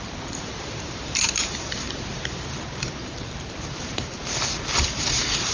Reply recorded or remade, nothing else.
remade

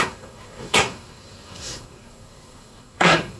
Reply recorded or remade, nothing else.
remade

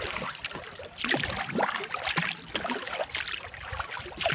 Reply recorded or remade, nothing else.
recorded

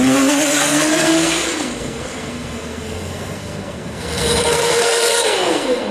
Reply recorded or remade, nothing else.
remade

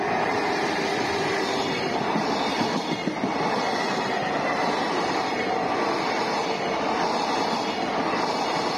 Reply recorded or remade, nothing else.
recorded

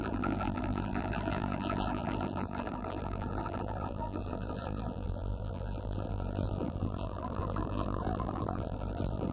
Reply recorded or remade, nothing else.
remade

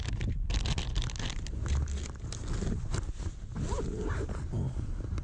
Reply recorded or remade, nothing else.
recorded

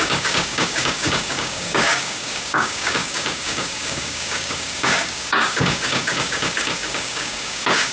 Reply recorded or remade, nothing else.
remade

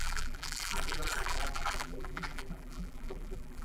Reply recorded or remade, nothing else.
remade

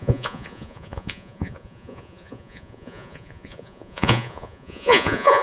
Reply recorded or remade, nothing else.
remade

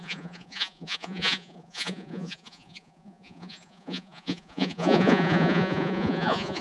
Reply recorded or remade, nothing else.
remade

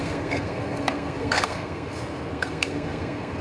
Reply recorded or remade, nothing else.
remade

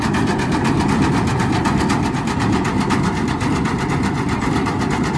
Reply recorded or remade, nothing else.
recorded